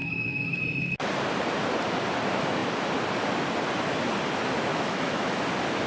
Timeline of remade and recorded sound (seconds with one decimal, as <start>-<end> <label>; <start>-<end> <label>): 0.0-0.6 remade; 0.6-4.7 recorded; 4.7-5.4 remade; 5.4-5.9 recorded